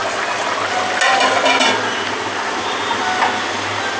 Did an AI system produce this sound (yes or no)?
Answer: no